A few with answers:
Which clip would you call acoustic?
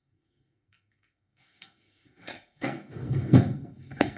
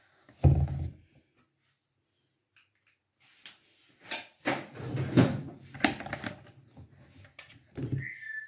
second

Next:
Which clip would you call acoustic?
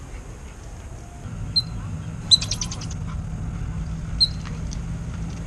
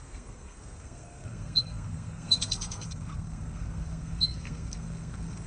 first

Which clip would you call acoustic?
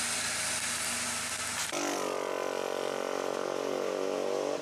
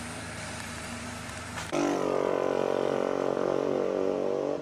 first